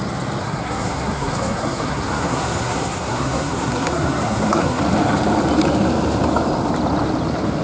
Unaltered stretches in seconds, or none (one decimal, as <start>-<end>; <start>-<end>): 0.0-0.4; 4.8-7.6